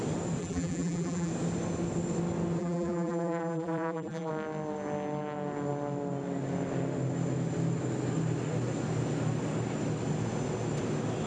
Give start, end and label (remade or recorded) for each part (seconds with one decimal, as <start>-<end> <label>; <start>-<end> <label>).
0.0-0.4 recorded; 0.4-1.3 remade; 1.3-2.6 recorded; 2.6-4.3 remade; 4.3-11.3 recorded